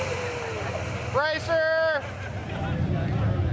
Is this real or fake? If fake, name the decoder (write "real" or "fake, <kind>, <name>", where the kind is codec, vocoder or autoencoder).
real